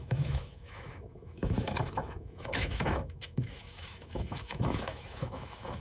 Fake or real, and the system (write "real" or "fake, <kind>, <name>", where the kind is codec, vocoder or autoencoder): fake, autoencoder, DAC-VAE